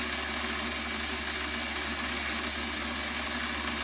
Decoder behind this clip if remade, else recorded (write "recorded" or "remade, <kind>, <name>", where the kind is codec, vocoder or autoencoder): recorded